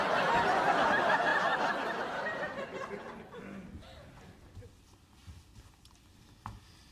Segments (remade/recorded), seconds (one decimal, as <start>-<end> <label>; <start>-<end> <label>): 0.0-6.9 recorded